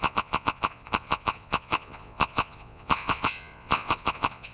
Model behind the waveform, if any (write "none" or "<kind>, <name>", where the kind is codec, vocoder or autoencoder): vocoder, Vocos